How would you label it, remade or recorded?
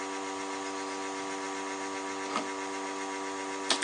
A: recorded